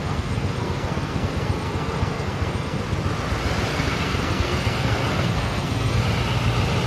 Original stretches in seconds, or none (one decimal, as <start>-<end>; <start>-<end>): 2.8-3.7; 6.0-6.9